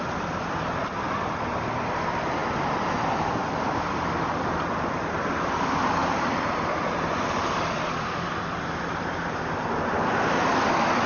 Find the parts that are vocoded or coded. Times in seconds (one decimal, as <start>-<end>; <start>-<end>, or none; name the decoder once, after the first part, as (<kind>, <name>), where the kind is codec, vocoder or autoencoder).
6.0-8.7 (vocoder, BigVGAN v2)